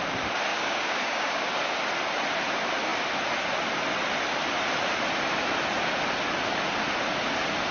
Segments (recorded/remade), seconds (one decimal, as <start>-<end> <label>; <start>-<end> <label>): 0.0-0.5 recorded; 0.5-1.8 remade; 1.8-7.7 recorded